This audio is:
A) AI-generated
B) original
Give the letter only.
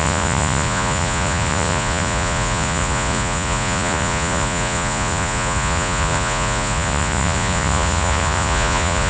A